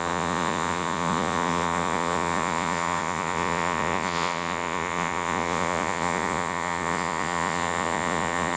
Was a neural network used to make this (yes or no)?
yes